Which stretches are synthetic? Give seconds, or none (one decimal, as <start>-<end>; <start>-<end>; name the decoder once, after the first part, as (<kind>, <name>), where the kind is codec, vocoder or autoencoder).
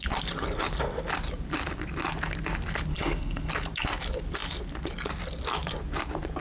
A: 2.9-3.5 (codec, HILCodec)